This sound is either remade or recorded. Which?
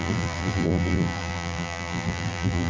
remade